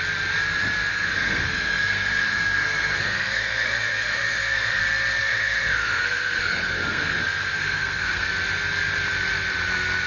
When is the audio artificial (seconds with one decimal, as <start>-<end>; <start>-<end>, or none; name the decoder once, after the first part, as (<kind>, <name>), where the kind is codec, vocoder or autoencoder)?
0.9-4.8 (codec, SNAC); 5.2-8.3